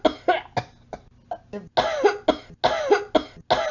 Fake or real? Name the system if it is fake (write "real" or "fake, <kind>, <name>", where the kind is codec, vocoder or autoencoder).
real